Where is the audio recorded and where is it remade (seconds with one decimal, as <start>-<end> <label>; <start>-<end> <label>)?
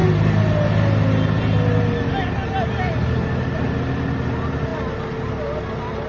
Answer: 0.0-6.1 recorded